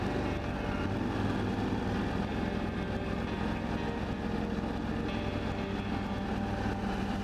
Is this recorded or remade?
recorded